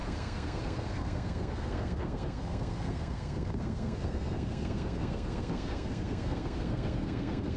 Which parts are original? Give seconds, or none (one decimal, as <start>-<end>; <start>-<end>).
none